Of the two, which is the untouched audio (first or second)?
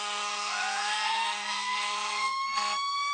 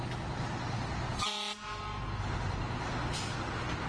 second